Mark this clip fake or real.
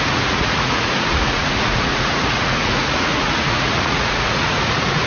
fake